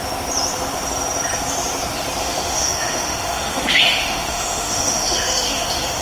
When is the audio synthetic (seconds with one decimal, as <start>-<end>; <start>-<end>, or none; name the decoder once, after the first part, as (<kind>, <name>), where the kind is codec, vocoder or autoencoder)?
2.2-6.0 (autoencoder, DAC-VAE)